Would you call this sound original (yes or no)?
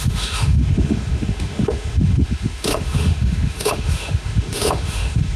no